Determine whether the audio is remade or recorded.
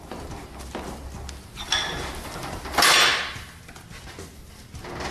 recorded